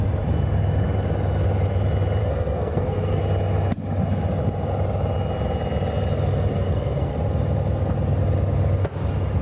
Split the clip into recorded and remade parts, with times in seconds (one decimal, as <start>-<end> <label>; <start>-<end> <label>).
0.0-2.2 recorded; 2.2-3.2 remade; 3.2-6.5 recorded; 6.5-7.1 remade; 7.1-9.4 recorded